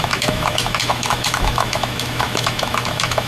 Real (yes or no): no